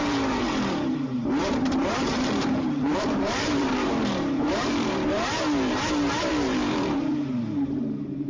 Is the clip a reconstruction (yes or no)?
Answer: yes